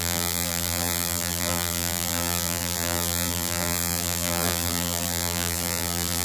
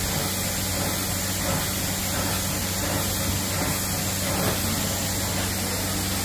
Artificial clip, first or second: first